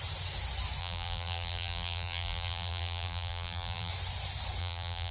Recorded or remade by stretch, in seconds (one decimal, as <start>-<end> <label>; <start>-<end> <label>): 0.0-0.8 recorded; 0.8-3.9 remade; 3.9-4.6 recorded; 4.6-5.1 remade